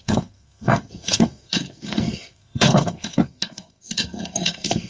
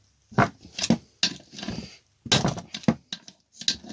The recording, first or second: second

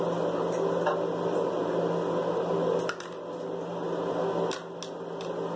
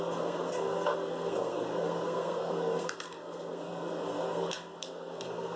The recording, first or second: first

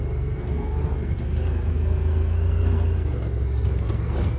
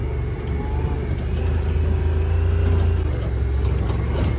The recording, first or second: second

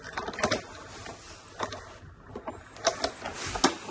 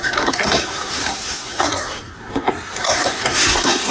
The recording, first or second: first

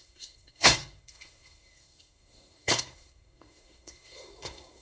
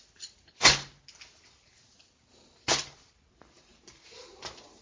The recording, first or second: second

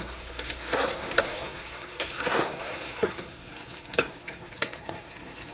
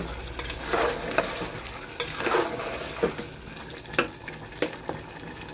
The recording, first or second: second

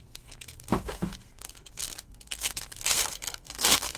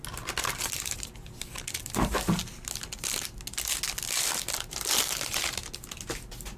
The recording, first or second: second